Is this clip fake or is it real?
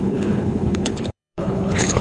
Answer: fake